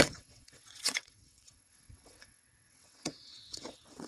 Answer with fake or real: fake